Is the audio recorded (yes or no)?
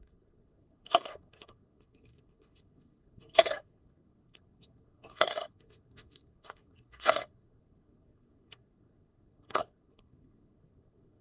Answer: no